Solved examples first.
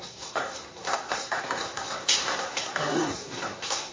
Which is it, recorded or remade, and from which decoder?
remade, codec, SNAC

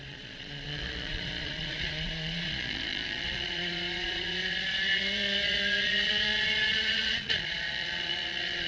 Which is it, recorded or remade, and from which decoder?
remade, vocoder, Vocos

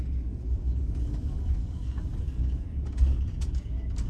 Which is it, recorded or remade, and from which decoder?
remade, codec, DAC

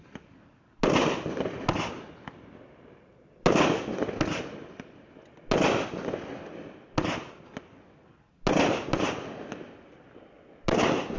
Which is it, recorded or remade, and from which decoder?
recorded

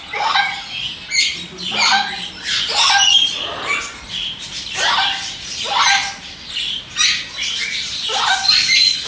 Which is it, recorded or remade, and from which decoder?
recorded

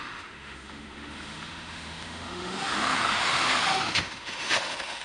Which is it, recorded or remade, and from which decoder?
remade, autoencoder, DAC-VAE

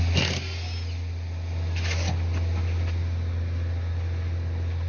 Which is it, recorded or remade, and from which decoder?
recorded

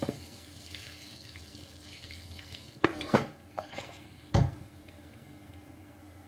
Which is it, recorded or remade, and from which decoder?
remade, codec, SNAC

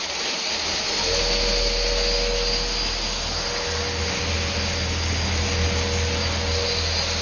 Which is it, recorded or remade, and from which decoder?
recorded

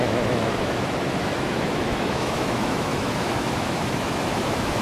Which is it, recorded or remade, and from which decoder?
remade, autoencoder, DAC-VAE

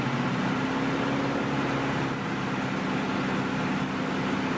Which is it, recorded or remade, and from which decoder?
recorded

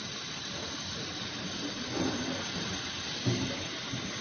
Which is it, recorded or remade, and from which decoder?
recorded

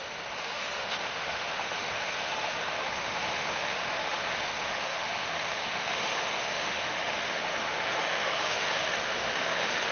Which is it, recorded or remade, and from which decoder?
remade, autoencoder, DAC-VAE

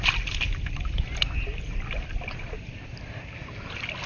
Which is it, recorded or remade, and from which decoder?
recorded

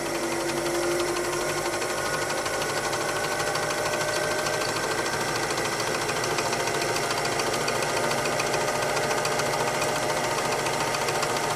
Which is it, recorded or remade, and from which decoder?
recorded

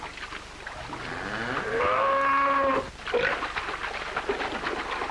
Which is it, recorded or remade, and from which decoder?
recorded